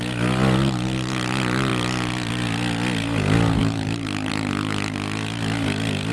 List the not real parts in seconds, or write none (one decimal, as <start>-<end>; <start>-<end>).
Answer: 0.0-1.7; 2.3-6.1